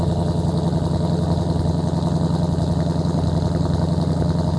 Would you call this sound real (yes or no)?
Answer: yes